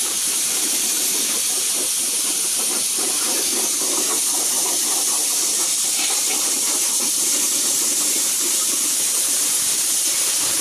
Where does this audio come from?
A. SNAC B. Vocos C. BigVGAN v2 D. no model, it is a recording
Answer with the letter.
C